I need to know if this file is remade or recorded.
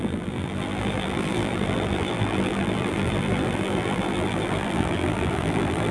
remade